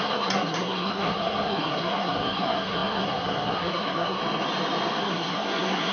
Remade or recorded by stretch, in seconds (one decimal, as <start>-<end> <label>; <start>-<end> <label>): 0.0-4.2 remade; 4.2-5.0 recorded; 5.0-5.9 remade